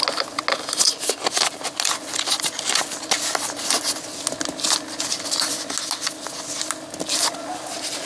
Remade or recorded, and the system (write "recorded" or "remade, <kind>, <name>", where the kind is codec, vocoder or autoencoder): recorded